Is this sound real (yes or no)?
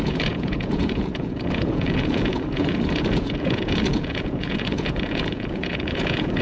no